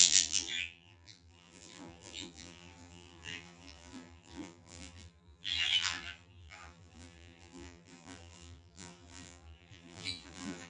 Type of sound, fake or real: fake